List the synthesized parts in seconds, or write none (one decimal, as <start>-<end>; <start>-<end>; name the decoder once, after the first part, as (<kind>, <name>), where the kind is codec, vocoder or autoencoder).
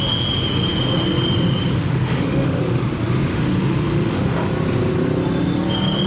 1.7-2.6 (autoencoder, DAC-VAE); 3.3-4.5